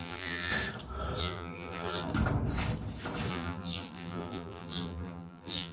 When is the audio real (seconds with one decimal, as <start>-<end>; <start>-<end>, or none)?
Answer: 0.5-1.2; 2.1-3.3